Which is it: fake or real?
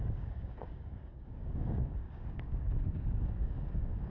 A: fake